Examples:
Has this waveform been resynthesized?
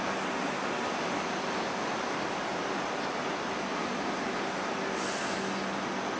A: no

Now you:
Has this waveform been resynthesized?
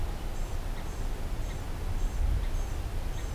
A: no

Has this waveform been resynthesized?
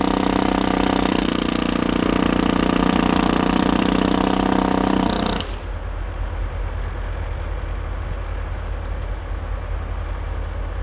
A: no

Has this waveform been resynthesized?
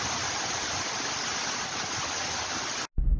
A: no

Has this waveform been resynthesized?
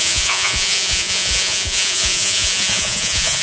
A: yes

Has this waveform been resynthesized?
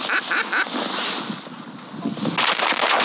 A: no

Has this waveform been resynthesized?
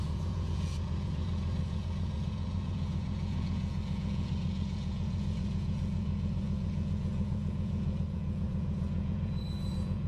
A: yes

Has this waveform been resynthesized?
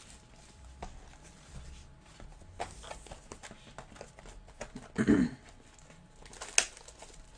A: no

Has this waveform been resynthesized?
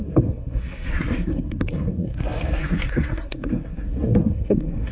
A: yes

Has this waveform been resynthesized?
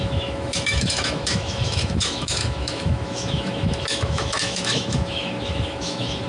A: yes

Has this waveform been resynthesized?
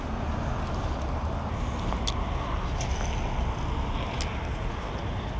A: no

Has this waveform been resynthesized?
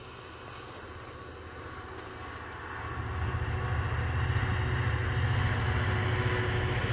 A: no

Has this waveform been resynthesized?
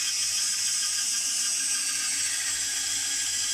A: no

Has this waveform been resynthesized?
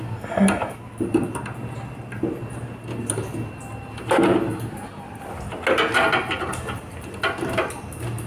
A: no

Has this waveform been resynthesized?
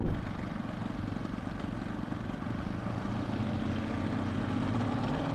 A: no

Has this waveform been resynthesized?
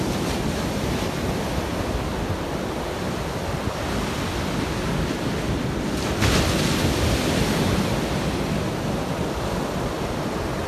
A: no